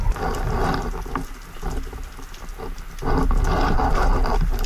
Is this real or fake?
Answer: real